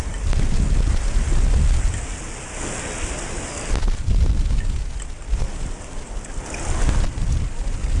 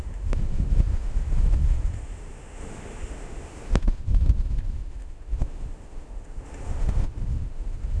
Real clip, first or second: first